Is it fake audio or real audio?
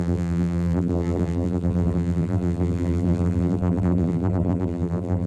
fake